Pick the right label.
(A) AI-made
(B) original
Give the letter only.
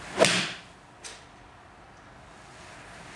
B